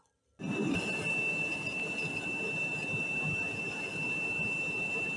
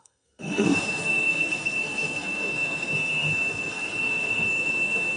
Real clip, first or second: first